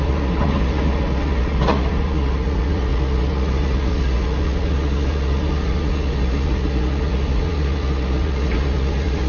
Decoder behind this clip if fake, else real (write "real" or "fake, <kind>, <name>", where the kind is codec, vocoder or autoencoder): fake, vocoder, Vocos